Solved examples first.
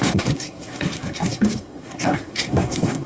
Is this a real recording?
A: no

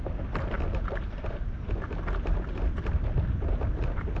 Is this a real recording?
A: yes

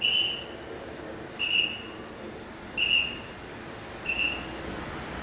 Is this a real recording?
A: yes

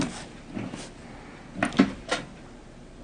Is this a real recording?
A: yes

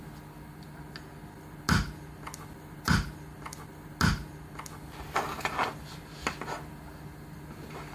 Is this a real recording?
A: yes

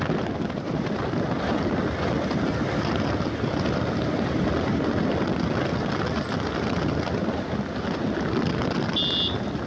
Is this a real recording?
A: yes